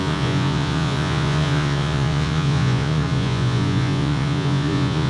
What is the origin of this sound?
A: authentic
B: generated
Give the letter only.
B